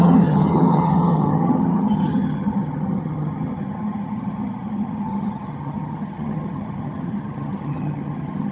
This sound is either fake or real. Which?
fake